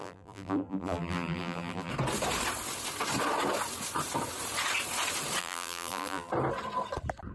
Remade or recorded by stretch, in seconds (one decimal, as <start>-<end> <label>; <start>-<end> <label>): 0.0-1.9 remade; 1.9-5.4 recorded; 5.4-6.3 remade; 6.3-7.3 recorded